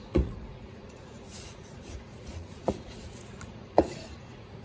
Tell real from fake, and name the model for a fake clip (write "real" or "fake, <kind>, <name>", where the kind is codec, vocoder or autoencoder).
fake, vocoder, Vocos